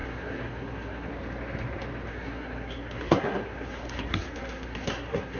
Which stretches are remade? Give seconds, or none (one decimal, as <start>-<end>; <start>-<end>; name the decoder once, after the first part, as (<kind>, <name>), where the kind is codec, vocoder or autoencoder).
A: 0.0-1.1 (codec, SNAC); 2.1-5.4